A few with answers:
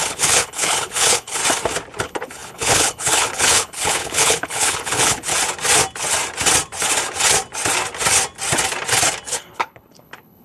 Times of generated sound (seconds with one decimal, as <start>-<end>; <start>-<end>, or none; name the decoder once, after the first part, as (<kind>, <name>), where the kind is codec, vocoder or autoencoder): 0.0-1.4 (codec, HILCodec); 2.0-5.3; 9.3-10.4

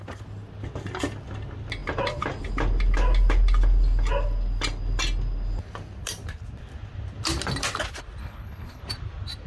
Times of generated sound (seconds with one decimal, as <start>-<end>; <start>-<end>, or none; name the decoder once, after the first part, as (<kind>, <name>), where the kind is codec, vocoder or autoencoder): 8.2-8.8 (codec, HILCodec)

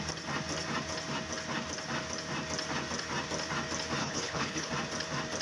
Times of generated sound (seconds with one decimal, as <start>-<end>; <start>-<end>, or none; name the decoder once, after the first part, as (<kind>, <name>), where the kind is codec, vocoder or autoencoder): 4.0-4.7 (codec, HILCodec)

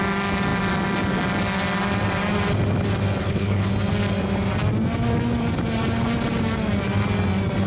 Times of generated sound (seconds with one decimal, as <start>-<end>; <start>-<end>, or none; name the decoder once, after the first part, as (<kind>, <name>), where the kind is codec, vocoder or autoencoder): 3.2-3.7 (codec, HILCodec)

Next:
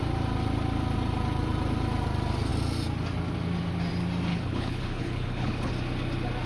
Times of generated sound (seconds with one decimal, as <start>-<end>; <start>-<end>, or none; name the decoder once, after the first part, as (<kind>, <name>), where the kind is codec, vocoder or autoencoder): 4.3-5.7 (codec, HILCodec)

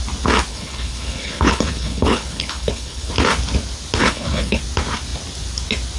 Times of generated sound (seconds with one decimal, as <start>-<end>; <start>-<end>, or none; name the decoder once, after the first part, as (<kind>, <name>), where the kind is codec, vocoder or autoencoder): 0.5-3.1 (codec, HILCodec); 4.0-4.6

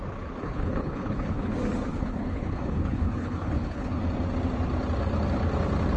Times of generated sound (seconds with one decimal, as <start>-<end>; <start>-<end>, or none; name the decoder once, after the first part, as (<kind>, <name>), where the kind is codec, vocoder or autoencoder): 0.4-1.5 (codec, HILCodec); 1.9-4.0

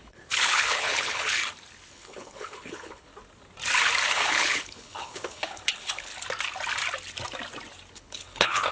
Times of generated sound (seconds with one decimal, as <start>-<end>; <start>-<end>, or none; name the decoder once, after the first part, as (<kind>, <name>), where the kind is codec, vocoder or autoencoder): 0.0-1.4 (codec, HILCodec); 1.9-3.1; 4.1-6.1; 7.9-8.7